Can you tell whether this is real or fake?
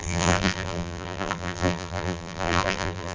fake